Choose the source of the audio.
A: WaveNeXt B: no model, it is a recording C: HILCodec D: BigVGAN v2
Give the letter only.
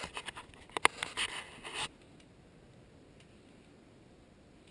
B